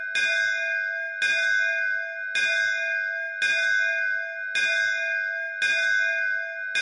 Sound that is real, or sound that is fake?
real